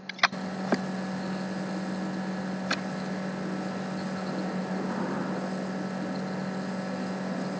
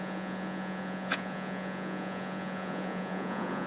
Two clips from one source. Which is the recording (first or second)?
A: first